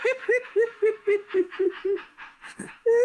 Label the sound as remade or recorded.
remade